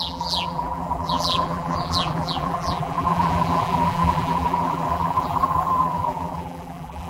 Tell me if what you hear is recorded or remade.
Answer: remade